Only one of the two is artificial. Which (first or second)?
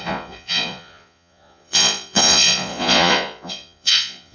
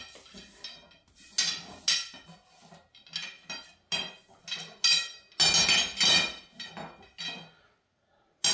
first